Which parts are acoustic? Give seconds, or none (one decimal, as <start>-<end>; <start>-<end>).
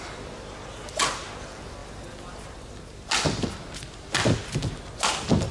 0.0-5.5